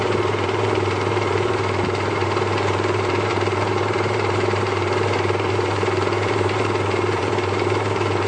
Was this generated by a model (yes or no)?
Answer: yes